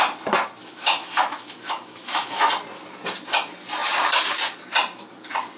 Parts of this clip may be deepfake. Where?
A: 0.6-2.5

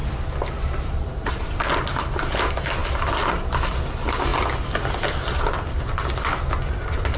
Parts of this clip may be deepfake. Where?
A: none

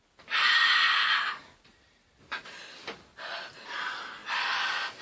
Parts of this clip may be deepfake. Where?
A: none

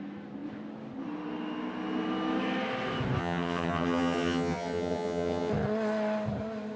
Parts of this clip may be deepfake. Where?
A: 3.2-5.5

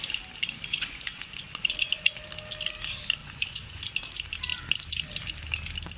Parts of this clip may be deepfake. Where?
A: 0.7-2.1; 3.2-3.8